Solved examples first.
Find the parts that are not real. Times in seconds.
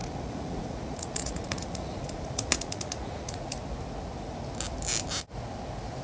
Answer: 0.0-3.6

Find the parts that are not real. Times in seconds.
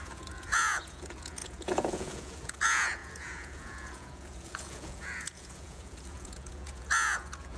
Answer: 0.0-7.6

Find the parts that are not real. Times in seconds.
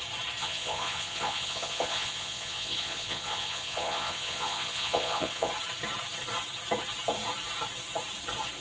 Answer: 0.4-5.5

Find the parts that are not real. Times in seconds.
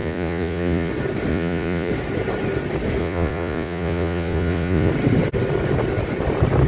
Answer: 0.0-0.9; 1.3-1.9; 3.0-4.9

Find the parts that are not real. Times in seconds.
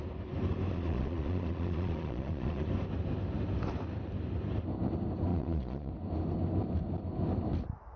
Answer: 0.7-2.7; 5.3-5.9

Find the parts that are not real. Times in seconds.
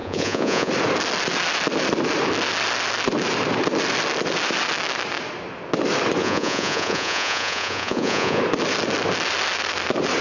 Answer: 0.0-0.7; 6.2-8.4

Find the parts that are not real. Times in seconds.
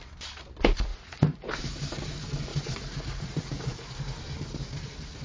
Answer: 0.9-1.6; 2.5-4.0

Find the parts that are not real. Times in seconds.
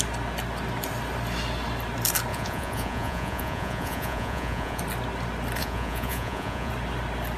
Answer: 2.3-4.8; 5.6-6.7